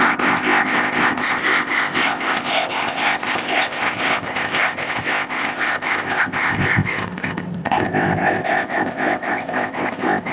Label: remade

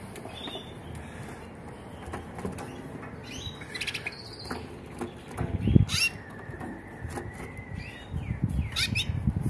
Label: recorded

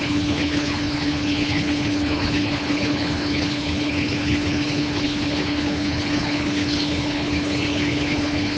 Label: remade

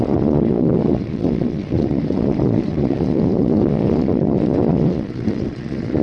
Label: remade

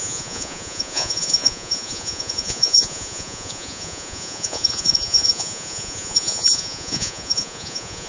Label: remade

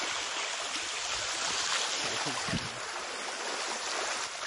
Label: recorded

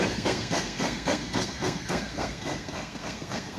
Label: remade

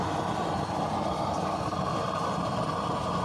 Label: recorded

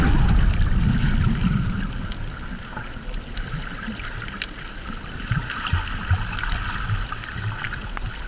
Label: recorded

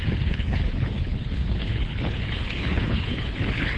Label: remade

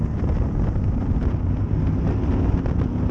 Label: recorded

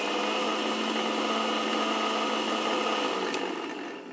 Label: recorded